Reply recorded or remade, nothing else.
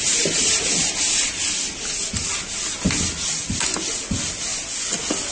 recorded